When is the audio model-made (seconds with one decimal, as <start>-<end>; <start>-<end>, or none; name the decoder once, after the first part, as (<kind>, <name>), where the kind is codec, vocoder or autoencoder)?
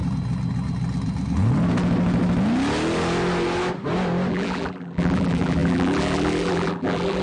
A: 4.3-7.2 (vocoder, BigVGAN v2)